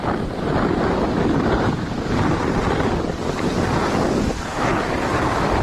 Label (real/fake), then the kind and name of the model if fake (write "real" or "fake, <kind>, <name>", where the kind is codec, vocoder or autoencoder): real